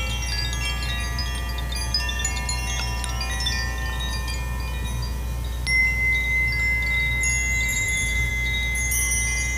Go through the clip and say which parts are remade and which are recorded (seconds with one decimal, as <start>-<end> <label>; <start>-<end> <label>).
0.0-7.7 recorded; 7.7-8.3 remade; 8.3-9.6 recorded